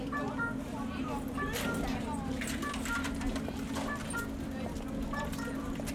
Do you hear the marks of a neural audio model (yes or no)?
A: no